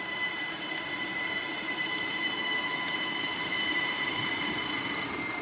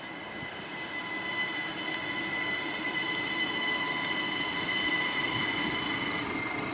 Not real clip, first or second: first